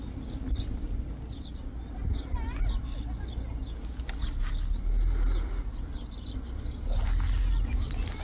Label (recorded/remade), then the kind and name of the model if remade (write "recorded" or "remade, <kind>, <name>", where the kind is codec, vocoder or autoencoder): recorded